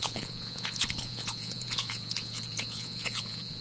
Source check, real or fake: fake